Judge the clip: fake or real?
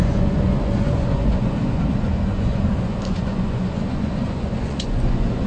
fake